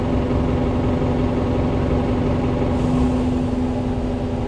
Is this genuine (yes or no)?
yes